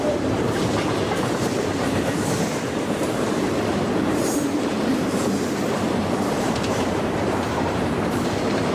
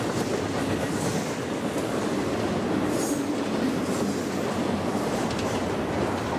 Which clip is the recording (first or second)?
second